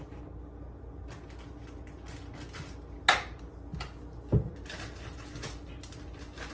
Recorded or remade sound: recorded